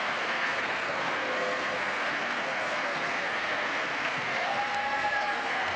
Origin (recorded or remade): remade